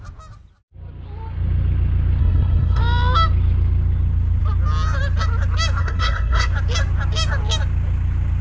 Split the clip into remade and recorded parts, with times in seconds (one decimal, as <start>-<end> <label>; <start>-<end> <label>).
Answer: 0.0-2.2 recorded; 2.2-2.8 remade; 2.8-5.8 recorded; 5.8-6.5 remade; 6.5-8.4 recorded